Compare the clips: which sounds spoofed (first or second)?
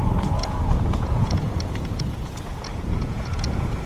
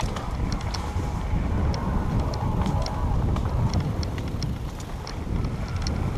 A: first